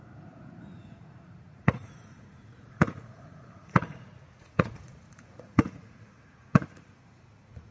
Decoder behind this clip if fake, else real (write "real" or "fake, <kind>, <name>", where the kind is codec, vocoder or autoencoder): fake, vocoder, Vocos